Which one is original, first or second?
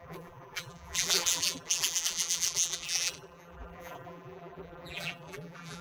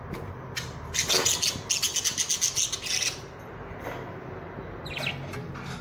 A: second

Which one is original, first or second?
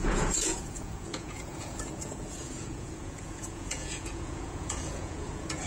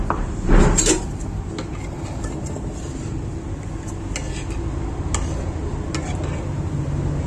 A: second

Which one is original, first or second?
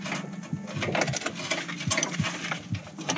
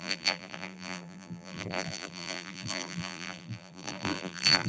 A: first